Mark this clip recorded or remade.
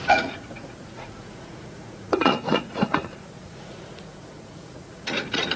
remade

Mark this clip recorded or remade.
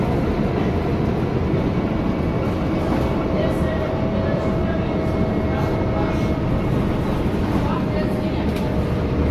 recorded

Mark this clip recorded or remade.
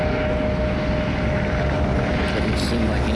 recorded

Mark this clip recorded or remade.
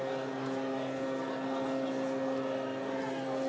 recorded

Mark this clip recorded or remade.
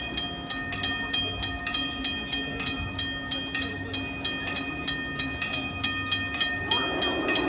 recorded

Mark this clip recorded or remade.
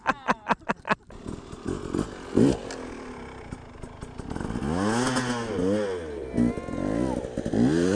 recorded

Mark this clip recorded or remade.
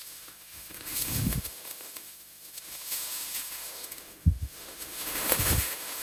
remade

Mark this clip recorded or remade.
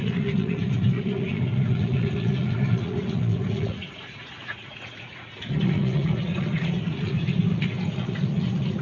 remade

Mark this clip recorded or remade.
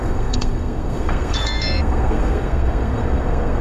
remade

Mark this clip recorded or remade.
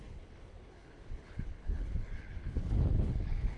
remade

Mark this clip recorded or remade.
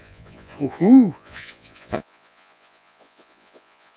remade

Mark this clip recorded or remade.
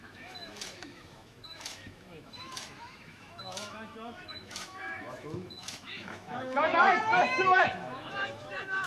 remade